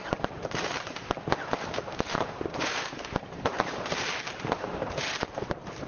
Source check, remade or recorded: remade